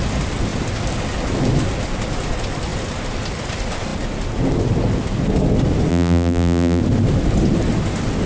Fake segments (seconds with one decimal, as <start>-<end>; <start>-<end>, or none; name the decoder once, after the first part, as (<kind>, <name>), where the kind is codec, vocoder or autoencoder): 5.9-6.8 (vocoder, BigVGAN v2)